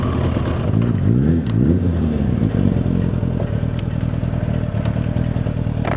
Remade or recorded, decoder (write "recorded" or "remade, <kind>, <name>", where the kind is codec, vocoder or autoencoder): recorded